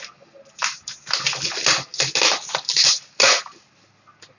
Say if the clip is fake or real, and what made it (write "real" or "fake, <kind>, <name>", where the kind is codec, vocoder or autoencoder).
real